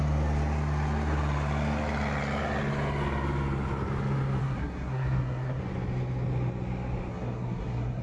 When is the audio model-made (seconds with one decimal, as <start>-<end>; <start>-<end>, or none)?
4.4-5.6; 7.1-8.0